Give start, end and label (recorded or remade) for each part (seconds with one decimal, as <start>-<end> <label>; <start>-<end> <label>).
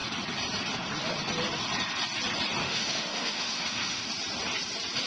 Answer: 0.0-2.6 recorded; 2.6-4.1 remade; 4.1-5.1 recorded